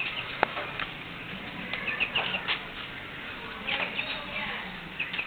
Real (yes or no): yes